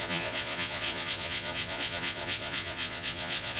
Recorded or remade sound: remade